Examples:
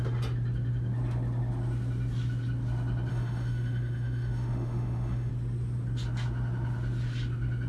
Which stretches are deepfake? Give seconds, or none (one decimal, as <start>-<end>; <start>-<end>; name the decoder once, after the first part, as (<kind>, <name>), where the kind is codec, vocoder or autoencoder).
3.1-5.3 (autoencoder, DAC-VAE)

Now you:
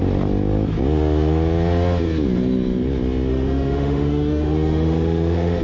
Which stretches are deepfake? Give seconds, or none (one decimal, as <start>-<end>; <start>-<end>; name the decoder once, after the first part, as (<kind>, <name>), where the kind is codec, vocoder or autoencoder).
3.3-5.6 (autoencoder, DAC-VAE)

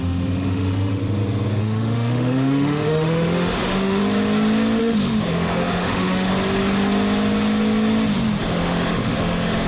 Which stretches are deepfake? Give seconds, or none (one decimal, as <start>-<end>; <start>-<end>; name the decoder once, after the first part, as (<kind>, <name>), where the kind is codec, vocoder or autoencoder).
0.0-1.0 (autoencoder, DAC-VAE); 1.6-4.0; 4.8-6.3; 8.4-9.7

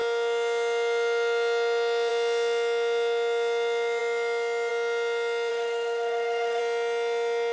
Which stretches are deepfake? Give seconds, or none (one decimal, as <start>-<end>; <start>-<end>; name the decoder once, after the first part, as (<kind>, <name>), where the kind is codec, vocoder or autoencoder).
5.5-6.6 (autoencoder, DAC-VAE)

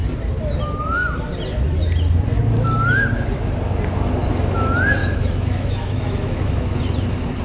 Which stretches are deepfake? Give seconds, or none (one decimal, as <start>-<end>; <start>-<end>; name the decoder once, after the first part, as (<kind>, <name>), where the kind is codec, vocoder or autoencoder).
5.0-6.8 (autoencoder, DAC-VAE)

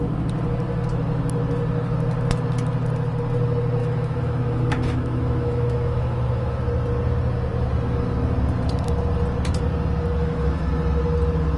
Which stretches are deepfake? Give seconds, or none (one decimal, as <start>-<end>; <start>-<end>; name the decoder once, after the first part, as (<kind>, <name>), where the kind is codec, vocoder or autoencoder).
3.8-6.6 (autoencoder, DAC-VAE); 10.2-10.7

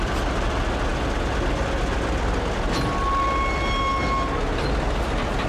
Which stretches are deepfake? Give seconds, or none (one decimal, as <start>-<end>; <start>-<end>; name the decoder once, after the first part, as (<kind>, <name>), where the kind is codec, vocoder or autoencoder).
none